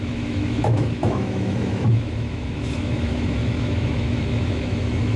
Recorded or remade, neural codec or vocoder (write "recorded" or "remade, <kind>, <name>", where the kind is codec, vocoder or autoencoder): remade, autoencoder, DAC-VAE